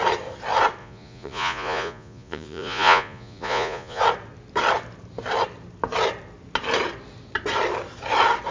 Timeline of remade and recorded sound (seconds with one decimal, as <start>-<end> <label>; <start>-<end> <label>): 0.0-0.8 recorded; 0.8-4.0 remade; 4.0-8.5 recorded